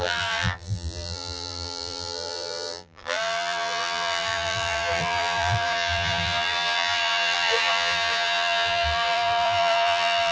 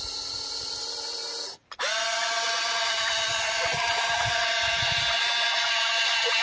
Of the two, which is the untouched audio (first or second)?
second